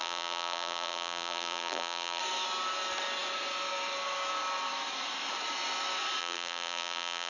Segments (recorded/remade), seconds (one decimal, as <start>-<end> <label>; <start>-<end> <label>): 0.0-2.2 remade; 2.2-6.2 recorded; 6.2-7.3 remade